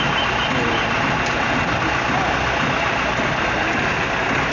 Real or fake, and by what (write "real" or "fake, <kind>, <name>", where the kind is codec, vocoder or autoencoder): real